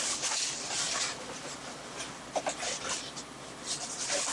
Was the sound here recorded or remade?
recorded